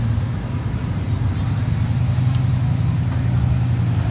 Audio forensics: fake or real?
real